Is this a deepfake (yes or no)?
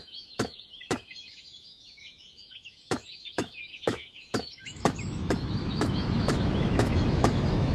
yes